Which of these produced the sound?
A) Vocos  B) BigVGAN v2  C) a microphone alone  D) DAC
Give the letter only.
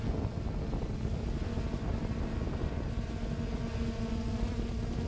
C